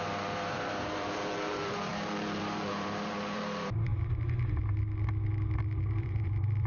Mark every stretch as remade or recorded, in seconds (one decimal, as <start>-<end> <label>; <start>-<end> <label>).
0.0-3.9 remade; 3.9-5.8 recorded; 5.8-6.7 remade